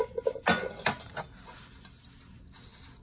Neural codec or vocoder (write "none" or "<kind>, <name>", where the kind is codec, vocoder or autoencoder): none